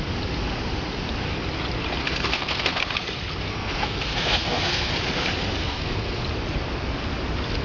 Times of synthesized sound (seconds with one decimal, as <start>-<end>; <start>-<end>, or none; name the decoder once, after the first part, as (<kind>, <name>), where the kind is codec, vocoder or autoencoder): 2.0-2.8 (codec, SNAC); 3.5-4.9; 5.6-6.2